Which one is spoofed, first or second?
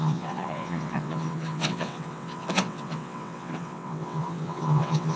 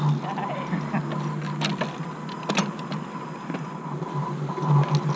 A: first